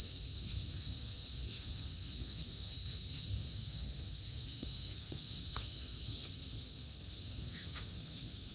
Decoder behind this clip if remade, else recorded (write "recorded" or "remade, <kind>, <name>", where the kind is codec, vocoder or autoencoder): remade, codec, SNAC